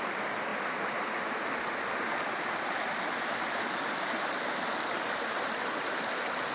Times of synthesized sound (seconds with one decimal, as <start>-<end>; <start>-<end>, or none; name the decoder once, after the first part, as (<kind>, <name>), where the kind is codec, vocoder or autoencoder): none